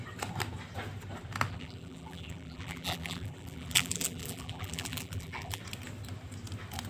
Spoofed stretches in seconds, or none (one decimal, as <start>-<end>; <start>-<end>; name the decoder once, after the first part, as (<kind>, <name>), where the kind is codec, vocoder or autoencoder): 1.5-5.6 (vocoder, BigVGAN v2)